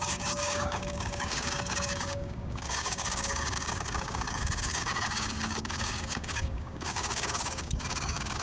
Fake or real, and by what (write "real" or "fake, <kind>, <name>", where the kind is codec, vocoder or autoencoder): fake, codec, DAC